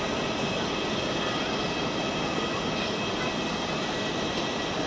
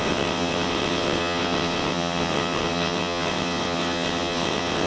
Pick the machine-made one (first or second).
second